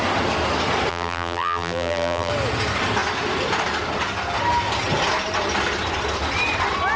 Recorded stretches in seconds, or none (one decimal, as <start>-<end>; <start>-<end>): 0.0-0.9; 2.3-7.0